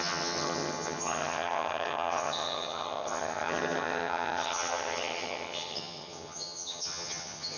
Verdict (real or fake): fake